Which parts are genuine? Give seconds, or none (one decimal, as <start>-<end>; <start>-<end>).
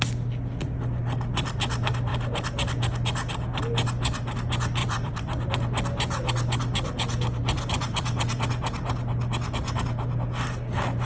0.0-4.8; 5.5-7.4; 8.4-11.0